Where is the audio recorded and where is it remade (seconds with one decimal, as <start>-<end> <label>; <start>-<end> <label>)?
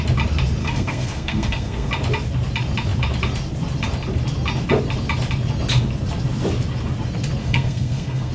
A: 0.0-0.6 recorded; 0.6-1.9 remade; 1.9-7.4 recorded; 7.4-8.3 remade